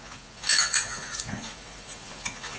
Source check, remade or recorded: remade